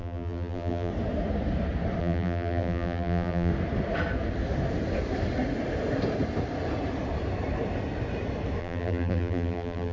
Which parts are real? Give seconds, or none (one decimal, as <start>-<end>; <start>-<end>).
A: 0.9-2.0; 3.5-8.6